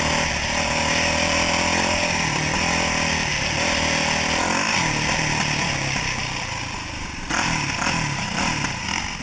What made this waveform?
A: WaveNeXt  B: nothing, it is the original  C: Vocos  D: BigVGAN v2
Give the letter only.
B